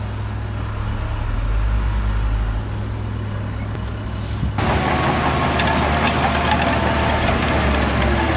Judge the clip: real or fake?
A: real